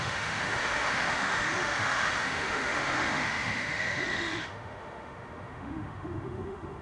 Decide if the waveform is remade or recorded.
remade